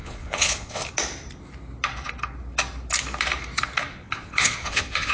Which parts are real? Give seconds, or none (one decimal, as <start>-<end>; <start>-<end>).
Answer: 0.8-3.9

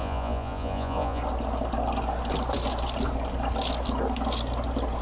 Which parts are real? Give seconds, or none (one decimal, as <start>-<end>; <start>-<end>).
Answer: 1.2-5.0

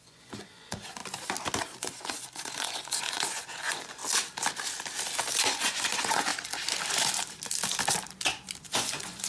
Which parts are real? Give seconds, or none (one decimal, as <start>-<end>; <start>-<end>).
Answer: 1.0-1.8; 4.0-5.4; 6.3-8.6

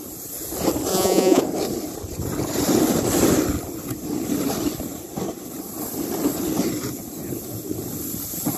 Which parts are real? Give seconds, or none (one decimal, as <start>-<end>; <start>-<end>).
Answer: 0.0-0.9; 1.4-8.6

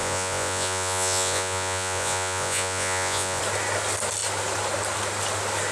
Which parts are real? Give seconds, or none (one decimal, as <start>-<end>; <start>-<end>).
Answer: 3.4-5.7

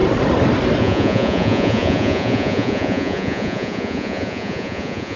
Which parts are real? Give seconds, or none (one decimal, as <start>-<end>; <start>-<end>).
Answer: 0.0-0.8